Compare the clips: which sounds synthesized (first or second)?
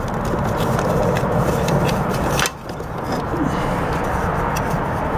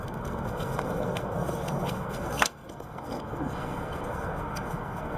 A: second